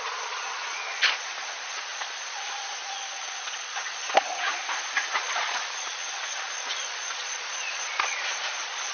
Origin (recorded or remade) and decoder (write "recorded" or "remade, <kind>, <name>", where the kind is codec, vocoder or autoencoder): remade, vocoder, Vocos